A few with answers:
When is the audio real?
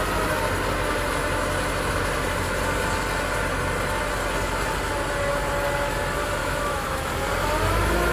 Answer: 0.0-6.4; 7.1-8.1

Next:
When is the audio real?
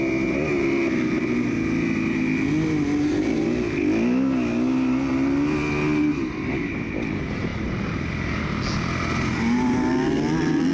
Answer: 0.0-10.7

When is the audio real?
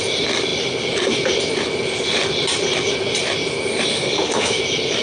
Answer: 0.0-3.9; 4.6-5.0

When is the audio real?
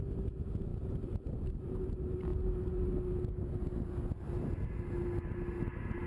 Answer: 0.0-6.1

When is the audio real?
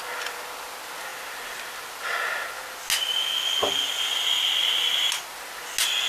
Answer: 0.0-6.1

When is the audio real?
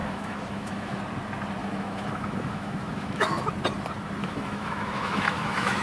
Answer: 1.0-1.6; 3.4-4.2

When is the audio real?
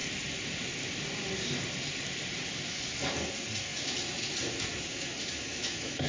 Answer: 0.0-3.7; 4.3-4.7